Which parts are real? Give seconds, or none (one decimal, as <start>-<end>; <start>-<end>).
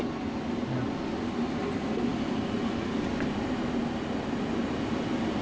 0.0-5.4